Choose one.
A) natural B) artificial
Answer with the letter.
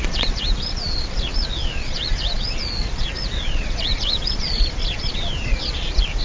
B